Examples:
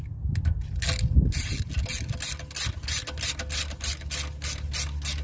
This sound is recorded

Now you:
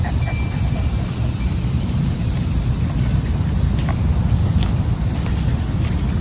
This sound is recorded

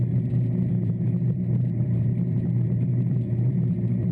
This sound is remade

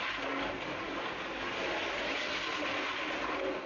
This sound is recorded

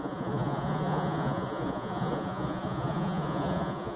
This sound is remade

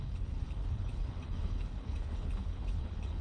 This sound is remade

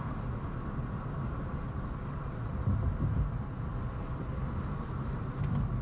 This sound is recorded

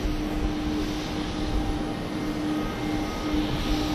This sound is recorded